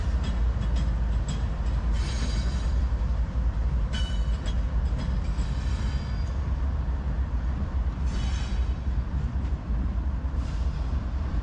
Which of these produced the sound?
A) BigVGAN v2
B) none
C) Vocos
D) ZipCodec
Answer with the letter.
B